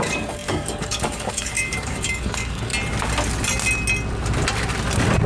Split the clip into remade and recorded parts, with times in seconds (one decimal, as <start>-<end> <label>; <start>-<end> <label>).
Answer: 0.0-2.7 remade; 2.7-5.3 recorded